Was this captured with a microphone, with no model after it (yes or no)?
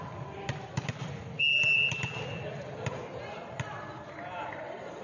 yes